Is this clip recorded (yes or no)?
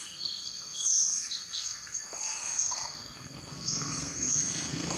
no